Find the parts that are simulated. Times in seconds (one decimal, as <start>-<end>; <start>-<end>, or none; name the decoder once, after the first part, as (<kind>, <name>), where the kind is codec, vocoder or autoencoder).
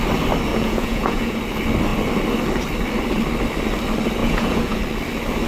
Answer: 0.5-1.4 (vocoder, Vocos); 4.2-4.8